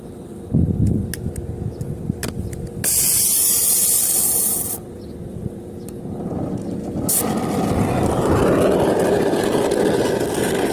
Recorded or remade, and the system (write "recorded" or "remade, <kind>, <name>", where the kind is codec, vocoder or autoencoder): recorded